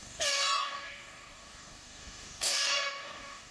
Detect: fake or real fake